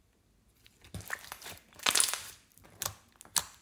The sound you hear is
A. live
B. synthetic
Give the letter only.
A